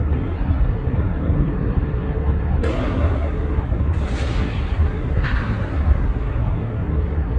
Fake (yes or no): yes